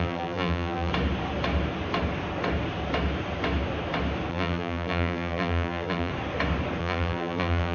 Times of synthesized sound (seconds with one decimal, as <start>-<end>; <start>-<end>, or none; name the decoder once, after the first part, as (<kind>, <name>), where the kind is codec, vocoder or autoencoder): 0.0-0.9 (vocoder, BigVGAN v2); 4.3-6.1; 6.8-7.7